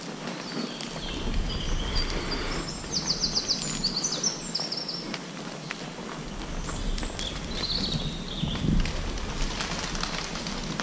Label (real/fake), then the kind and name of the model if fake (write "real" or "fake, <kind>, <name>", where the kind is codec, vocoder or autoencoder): real